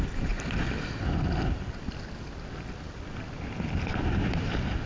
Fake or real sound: real